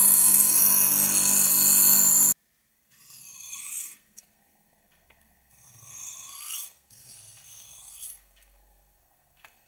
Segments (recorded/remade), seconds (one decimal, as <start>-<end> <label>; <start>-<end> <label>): 0.0-0.6 remade; 0.6-2.7 recorded; 2.7-9.7 remade

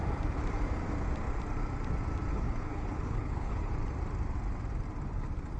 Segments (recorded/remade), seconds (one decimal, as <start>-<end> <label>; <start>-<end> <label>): 0.0-2.3 recorded; 2.3-3.7 remade; 3.7-5.6 recorded

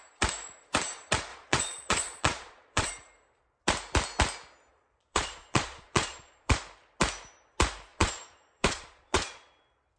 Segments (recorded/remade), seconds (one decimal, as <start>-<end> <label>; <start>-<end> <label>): 0.0-1.3 recorded; 1.3-2.9 remade; 2.9-4.7 recorded; 4.7-6.5 remade; 6.5-7.9 recorded; 7.9-9.5 remade; 9.5-10.0 recorded